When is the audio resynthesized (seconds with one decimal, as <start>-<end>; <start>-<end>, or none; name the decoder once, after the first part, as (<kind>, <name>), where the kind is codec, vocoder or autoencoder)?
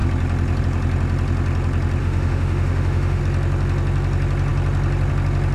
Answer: 2.0-3.2 (autoencoder, DAC-VAE)